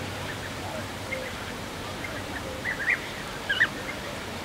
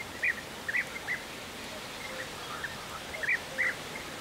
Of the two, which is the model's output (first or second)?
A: first